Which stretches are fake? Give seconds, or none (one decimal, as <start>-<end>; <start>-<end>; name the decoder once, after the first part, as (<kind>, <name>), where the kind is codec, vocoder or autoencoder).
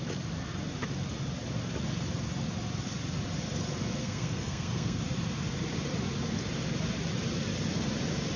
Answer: 4.0-5.0 (codec, SNAC)